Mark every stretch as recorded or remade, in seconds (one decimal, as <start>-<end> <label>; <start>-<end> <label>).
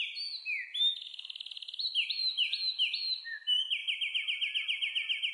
0.0-1.1 recorded; 1.1-2.6 remade; 2.6-5.3 recorded